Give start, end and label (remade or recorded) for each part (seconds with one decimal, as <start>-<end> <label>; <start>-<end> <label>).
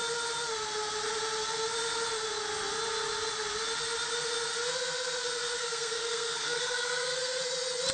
0.0-5.6 recorded; 5.6-7.4 remade; 7.4-7.9 recorded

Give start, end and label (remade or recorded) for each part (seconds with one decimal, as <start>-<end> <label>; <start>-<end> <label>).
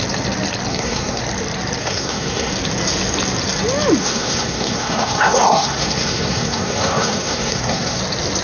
0.0-0.7 recorded; 0.7-1.2 remade; 1.2-1.8 recorded; 1.8-2.5 remade; 2.5-4.0 recorded; 4.0-8.0 remade; 8.0-8.4 recorded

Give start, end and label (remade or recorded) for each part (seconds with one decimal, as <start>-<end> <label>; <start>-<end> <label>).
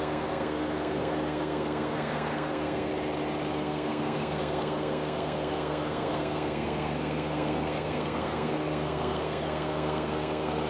0.0-2.9 remade; 2.9-3.5 recorded; 3.5-10.7 remade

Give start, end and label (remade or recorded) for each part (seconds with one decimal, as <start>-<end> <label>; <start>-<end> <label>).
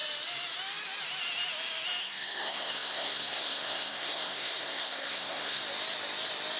0.0-2.0 recorded; 2.0-5.6 remade; 5.6-6.6 recorded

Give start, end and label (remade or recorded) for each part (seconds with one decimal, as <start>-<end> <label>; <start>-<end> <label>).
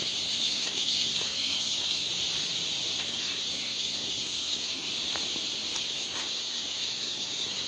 0.0-2.1 remade; 2.1-3.0 recorded; 3.0-4.9 remade; 4.9-5.8 recorded; 5.8-7.7 remade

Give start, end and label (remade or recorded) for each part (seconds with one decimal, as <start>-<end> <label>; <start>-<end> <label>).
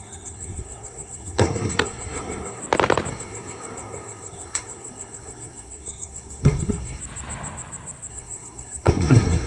0.0-2.6 remade; 2.6-3.1 recorded; 3.1-7.0 remade; 7.0-8.1 recorded; 8.1-9.5 remade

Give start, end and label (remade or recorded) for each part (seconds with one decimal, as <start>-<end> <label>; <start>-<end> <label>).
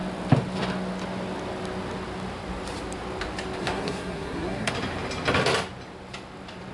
0.0-3.6 recorded; 3.6-4.7 remade; 4.7-6.7 recorded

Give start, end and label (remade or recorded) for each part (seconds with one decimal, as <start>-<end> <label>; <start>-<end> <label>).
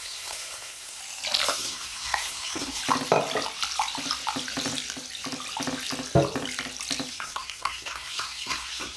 0.0-1.0 remade; 1.0-1.5 recorded; 1.5-2.8 remade; 2.8-7.1 recorded; 7.1-9.0 remade